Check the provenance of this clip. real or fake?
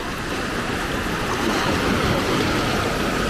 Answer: real